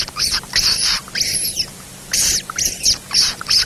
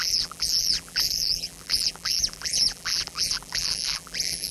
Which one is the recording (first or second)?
first